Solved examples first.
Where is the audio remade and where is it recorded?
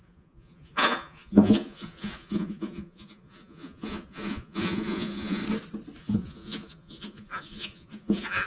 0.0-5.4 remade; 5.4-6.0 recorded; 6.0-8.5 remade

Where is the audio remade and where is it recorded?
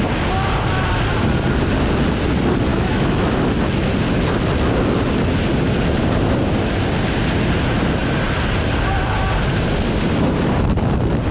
0.0-2.7 recorded; 2.7-3.5 remade; 3.5-11.3 recorded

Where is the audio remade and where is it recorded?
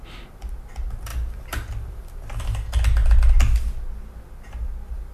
0.0-1.1 recorded; 1.1-2.4 remade; 2.4-5.1 recorded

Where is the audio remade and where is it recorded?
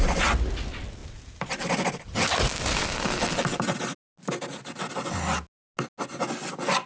0.0-6.9 recorded